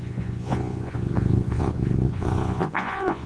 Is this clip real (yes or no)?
no